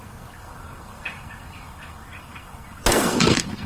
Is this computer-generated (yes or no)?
yes